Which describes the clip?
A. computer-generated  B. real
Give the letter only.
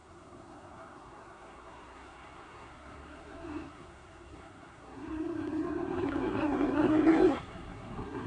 A